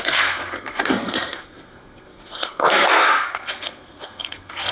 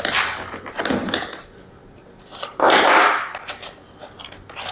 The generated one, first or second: first